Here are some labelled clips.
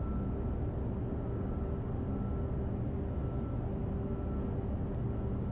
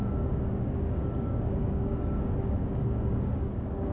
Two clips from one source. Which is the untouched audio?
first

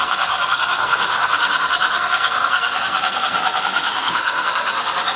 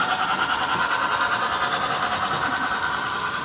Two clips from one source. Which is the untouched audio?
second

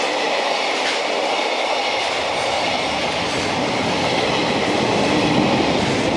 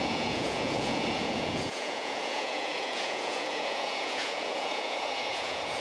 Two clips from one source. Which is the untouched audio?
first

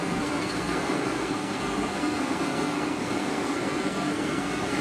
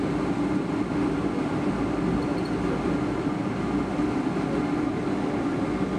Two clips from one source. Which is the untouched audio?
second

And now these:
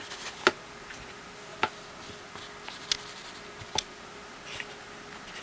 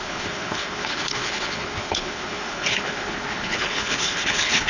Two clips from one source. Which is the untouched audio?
first